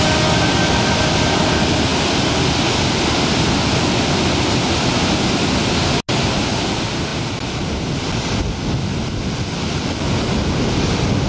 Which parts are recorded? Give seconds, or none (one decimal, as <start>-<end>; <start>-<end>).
0.0-11.3

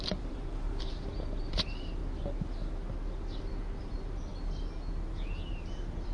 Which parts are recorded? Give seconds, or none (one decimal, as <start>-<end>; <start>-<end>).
2.0-3.8; 4.3-5.5

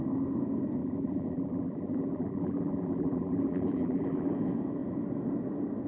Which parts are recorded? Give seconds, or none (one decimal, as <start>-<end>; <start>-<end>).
0.0-0.8; 4.3-5.9

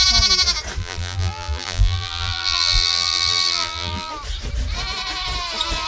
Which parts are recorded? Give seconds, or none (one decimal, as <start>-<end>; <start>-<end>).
0.0-0.8; 4.1-5.9

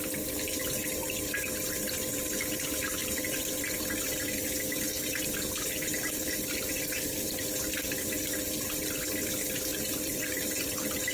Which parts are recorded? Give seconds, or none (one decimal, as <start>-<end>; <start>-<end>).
0.0-3.0; 3.8-9.7; 10.4-11.1

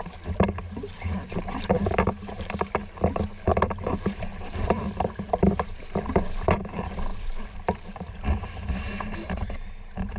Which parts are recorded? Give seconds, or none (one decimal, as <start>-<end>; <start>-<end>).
2.8-3.5